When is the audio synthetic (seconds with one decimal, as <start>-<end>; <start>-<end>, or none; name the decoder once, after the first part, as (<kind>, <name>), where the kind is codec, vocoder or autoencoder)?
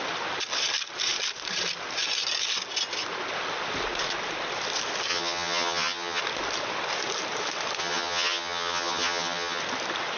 5.1-6.2 (vocoder, HiFi-GAN); 7.8-9.6